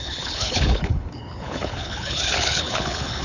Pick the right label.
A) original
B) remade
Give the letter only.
B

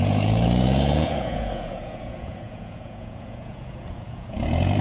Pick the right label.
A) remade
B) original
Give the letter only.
A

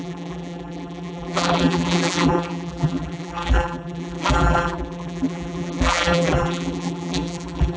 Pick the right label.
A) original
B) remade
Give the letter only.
B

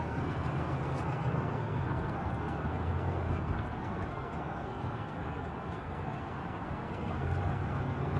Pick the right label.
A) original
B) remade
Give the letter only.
B